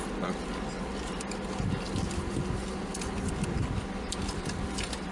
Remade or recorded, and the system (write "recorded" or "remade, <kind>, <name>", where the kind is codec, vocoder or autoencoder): recorded